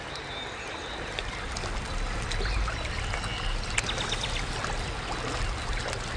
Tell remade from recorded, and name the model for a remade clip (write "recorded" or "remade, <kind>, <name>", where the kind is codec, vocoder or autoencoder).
recorded